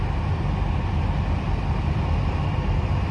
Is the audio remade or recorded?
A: recorded